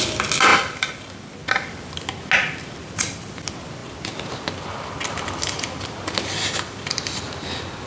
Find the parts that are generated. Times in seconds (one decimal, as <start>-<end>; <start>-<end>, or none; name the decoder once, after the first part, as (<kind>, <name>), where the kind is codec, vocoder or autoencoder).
none